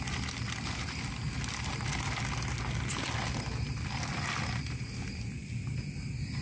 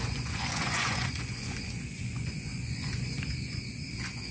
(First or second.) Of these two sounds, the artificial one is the second